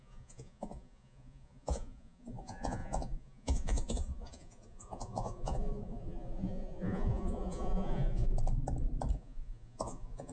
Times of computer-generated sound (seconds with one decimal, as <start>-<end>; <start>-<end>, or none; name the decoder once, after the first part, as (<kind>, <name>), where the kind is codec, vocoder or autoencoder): 0.0-8.3 (vocoder, Vocos); 9.1-10.3